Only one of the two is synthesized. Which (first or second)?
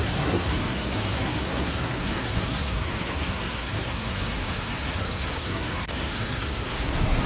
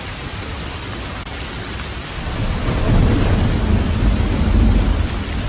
first